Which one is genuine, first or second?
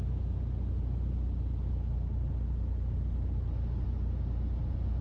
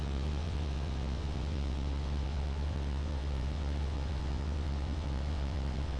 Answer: first